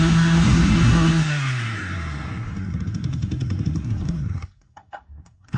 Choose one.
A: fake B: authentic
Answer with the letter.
A